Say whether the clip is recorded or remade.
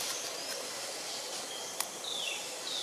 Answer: recorded